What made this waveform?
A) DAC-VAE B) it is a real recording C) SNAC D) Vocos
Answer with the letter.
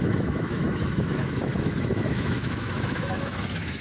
A